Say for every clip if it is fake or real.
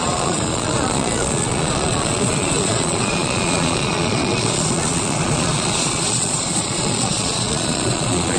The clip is fake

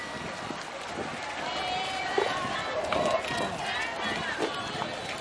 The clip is real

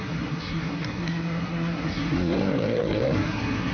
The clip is fake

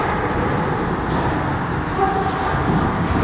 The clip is real